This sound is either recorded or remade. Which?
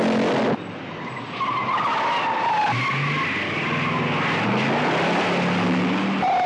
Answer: recorded